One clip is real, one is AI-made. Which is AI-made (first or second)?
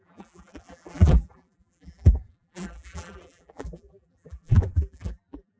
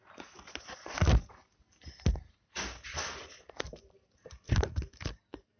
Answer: first